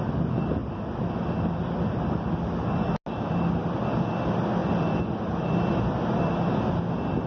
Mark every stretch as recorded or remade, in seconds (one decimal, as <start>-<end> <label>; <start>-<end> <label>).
0.0-4.6 recorded; 4.6-6.3 remade; 6.3-7.3 recorded